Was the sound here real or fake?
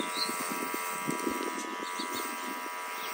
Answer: real